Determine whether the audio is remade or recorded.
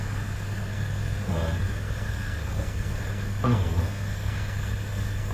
remade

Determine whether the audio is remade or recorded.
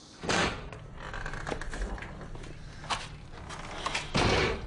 recorded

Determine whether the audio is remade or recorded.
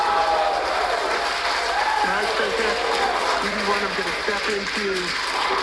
recorded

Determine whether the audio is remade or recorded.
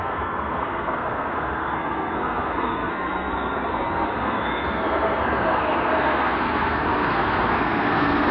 remade